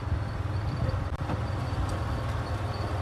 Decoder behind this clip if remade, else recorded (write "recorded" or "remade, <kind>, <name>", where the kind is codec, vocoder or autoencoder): remade, vocoder, BigVGAN v2